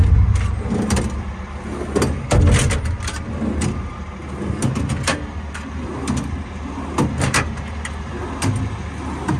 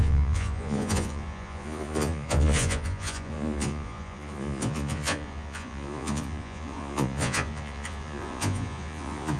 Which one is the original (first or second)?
first